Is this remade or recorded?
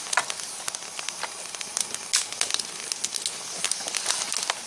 recorded